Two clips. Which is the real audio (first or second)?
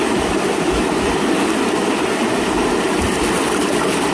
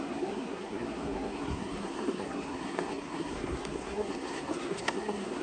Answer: first